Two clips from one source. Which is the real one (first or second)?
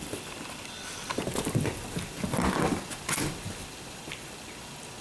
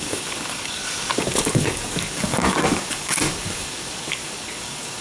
first